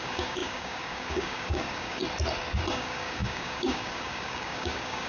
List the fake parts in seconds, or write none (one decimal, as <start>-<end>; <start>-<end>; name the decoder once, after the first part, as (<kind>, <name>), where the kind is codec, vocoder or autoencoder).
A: 0.0-2.0 (codec, DAC); 2.7-5.1